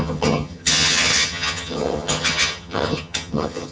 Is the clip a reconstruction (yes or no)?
yes